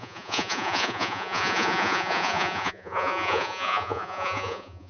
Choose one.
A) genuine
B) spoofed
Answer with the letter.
B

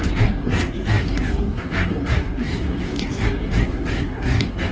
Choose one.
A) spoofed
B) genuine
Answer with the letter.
A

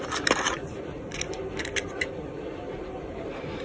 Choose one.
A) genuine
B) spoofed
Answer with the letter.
A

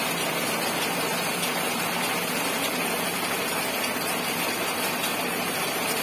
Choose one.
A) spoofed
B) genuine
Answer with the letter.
B